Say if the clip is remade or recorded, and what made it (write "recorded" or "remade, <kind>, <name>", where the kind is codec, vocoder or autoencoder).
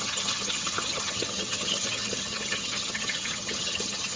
remade, vocoder, HiFi-GAN